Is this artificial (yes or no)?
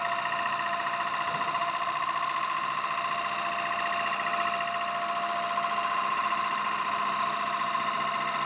no